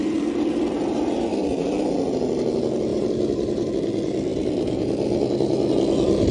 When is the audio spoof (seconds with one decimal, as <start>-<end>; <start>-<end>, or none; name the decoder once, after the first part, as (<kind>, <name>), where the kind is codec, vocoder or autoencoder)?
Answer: 1.3-1.9 (vocoder, BigVGAN v2); 2.9-3.7; 4.3-5.7

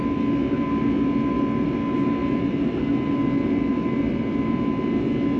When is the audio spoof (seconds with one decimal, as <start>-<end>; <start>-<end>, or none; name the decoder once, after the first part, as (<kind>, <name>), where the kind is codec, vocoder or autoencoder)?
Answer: none

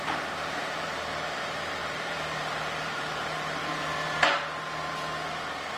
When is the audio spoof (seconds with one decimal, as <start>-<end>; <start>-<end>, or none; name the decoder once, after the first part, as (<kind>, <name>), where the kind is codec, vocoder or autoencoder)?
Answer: 0.0-3.6 (vocoder, BigVGAN v2)

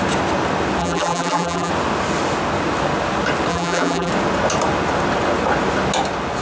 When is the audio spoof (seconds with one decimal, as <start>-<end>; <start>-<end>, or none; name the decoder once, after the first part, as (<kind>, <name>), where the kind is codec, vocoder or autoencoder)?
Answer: 0.8-1.7 (vocoder, BigVGAN v2); 3.5-4.1

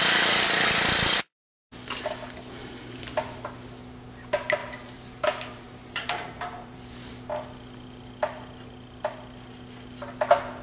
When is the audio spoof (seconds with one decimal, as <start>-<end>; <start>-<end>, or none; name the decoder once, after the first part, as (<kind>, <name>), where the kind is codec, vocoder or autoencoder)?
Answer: 4.6-7.1 (vocoder, BigVGAN v2)

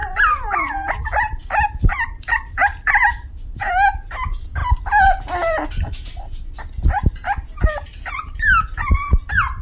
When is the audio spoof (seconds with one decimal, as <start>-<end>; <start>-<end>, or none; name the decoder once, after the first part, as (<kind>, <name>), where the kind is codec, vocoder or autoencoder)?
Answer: 0.0-3.7 (vocoder, BigVGAN v2); 4.6-5.8

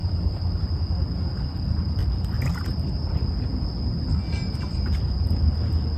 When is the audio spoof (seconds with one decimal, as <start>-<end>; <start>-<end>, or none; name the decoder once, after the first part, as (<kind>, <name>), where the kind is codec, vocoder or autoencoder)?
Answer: 0.0-0.6 (vocoder, BigVGAN v2); 2.0-2.9

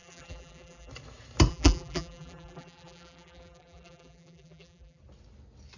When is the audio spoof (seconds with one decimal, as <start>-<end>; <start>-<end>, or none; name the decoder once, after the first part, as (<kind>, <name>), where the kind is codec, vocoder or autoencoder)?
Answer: 0.0-0.9 (vocoder, BigVGAN v2); 1.5-5.0